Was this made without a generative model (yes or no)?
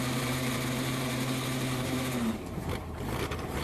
no